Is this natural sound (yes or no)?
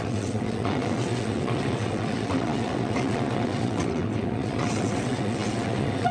no